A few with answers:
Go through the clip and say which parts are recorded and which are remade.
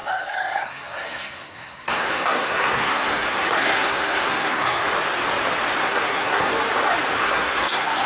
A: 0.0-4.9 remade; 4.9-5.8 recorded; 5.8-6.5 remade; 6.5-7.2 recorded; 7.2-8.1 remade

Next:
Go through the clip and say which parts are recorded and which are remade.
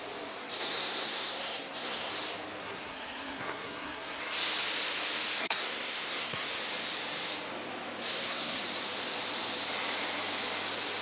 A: 0.0-0.4 recorded; 0.4-2.1 remade; 2.1-2.6 recorded; 2.6-4.2 remade; 4.2-5.4 recorded; 5.4-6.5 remade; 6.5-8.0 recorded; 8.0-8.6 remade; 8.6-11.0 recorded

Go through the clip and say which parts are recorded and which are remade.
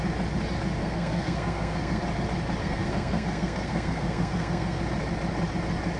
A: 0.0-0.8 recorded; 0.8-2.0 remade; 2.0-2.6 recorded; 2.6-4.8 remade; 4.8-6.0 recorded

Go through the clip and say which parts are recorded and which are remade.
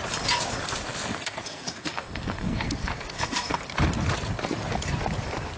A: 0.0-1.1 recorded; 1.1-3.6 remade; 3.6-5.6 recorded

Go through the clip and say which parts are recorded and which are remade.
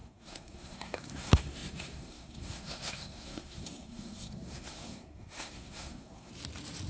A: 0.0-6.3 remade; 6.3-6.9 recorded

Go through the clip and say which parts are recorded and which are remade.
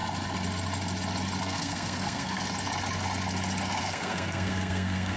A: 0.0-1.4 recorded; 1.4-2.4 remade; 2.4-3.8 recorded; 3.8-5.2 remade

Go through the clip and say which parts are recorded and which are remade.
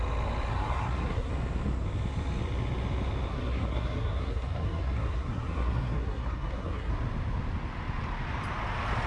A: 0.0-0.5 recorded; 0.5-1.3 remade; 1.3-3.3 recorded; 3.3-6.9 remade; 6.9-9.1 recorded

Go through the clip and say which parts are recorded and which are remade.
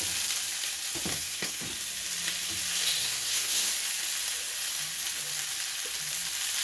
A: 0.0-1.1 recorded; 1.1-1.7 remade; 1.7-3.0 recorded; 3.0-3.7 remade; 3.7-6.6 recorded